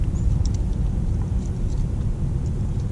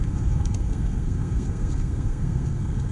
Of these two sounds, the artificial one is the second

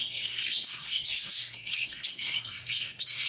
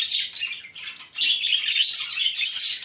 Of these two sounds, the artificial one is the first